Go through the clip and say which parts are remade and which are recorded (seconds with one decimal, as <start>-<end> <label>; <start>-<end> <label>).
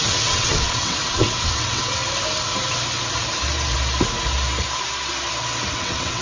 0.0-2.0 remade; 2.0-5.7 recorded; 5.7-6.2 remade